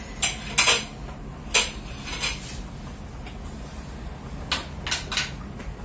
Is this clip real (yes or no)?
yes